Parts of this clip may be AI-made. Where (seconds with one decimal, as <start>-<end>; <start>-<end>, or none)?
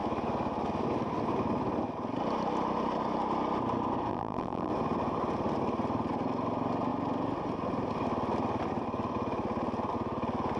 4.1-4.7